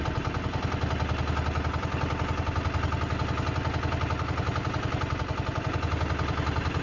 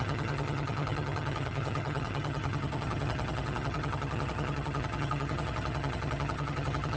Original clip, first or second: first